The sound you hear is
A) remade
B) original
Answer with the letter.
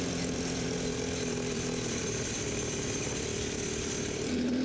A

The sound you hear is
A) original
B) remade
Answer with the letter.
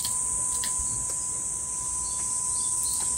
A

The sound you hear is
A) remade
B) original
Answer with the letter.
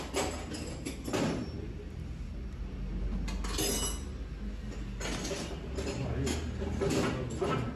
B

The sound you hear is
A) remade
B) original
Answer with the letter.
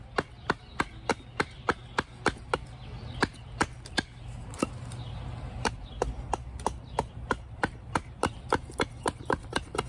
B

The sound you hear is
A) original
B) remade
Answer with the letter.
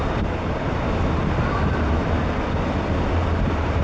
B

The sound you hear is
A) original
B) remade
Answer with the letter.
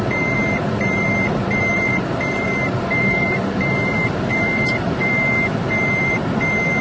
B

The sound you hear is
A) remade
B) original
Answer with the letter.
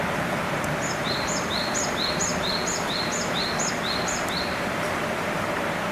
A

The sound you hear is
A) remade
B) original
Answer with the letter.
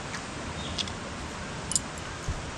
B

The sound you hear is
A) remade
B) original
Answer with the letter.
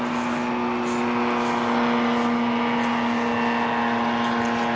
B